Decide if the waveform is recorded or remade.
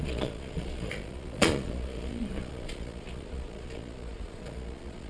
remade